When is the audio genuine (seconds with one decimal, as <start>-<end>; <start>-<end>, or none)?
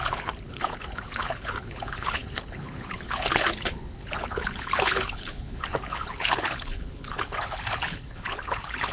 none